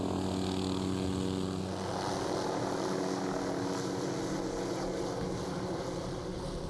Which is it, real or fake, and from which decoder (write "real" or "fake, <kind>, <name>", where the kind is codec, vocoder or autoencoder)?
real